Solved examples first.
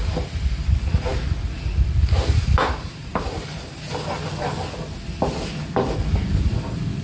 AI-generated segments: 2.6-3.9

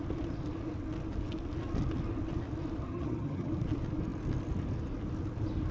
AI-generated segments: 2.9-3.5

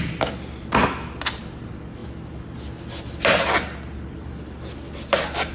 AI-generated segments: none